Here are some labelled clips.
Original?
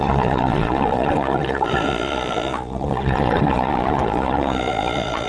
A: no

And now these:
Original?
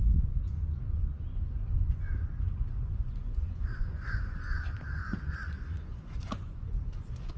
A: no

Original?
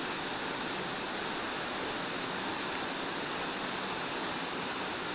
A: yes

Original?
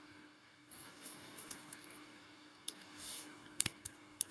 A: no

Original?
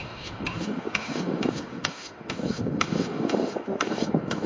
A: no